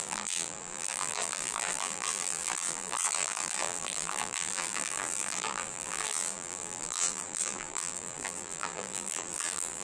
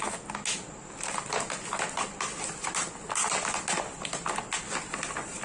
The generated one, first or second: first